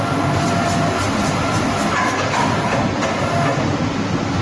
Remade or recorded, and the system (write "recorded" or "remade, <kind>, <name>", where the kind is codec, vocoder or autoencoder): recorded